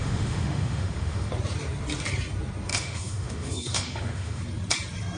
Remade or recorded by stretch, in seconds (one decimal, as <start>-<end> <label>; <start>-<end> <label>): 0.0-1.3 remade; 1.3-2.7 recorded; 2.7-4.4 remade; 4.4-5.2 recorded

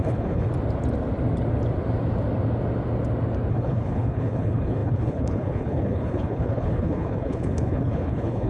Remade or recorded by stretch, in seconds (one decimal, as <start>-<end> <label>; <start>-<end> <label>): 0.0-0.5 remade; 0.5-3.5 recorded; 3.5-8.5 remade

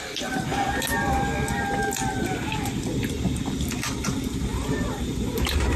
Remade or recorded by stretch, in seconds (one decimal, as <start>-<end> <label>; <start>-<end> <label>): 0.0-4.5 recorded; 4.5-5.8 remade

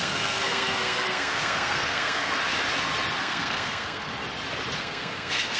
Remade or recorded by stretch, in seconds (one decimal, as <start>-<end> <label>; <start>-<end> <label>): 0.0-2.4 remade; 2.4-3.2 recorded; 3.2-4.1 remade; 4.1-4.8 recorded; 4.8-5.6 remade

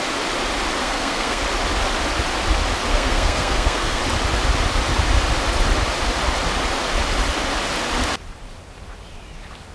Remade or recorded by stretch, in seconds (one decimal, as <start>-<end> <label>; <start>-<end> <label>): 0.0-0.8 recorded; 0.8-1.4 remade; 1.4-2.9 recorded; 2.9-4.0 remade; 4.0-9.7 recorded

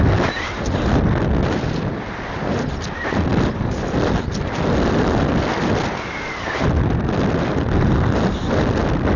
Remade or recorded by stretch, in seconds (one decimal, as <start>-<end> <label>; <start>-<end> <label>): 0.0-9.2 recorded